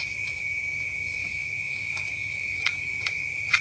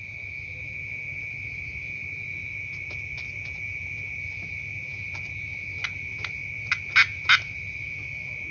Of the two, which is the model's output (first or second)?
first